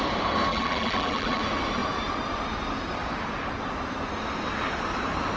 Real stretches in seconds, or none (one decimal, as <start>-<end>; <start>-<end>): 0.0-0.5; 1.4-5.4